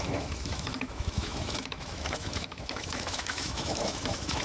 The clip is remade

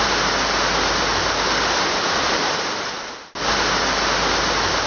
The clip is recorded